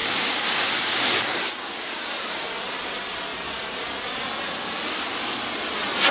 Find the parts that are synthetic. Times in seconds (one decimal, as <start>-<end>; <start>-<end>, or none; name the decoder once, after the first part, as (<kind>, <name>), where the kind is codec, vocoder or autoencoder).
0.0-2.1 (codec, DAC)